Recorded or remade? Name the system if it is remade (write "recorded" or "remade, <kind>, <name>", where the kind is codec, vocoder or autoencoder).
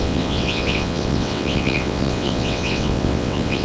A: remade, vocoder, WaveNeXt